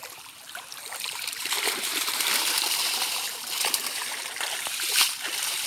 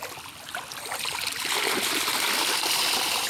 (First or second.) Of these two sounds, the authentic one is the second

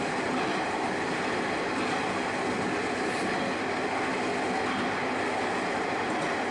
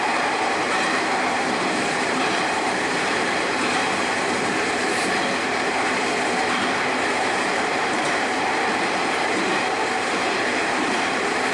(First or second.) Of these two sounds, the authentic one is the first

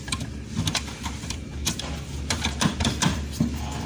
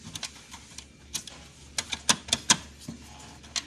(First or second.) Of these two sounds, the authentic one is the second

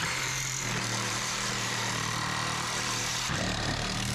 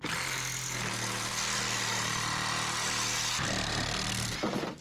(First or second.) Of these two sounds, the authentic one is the second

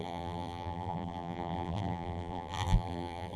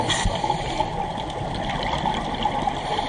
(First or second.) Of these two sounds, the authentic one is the second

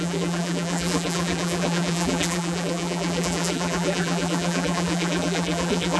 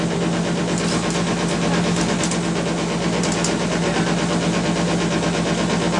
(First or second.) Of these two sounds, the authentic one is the second